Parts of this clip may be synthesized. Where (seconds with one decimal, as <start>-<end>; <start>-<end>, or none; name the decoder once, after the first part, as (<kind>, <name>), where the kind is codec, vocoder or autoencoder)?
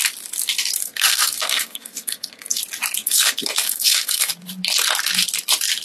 0.8-2.6 (codec, SNAC); 3.0-4.3